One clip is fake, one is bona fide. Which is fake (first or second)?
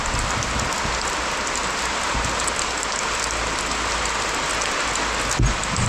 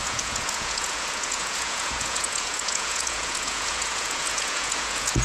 second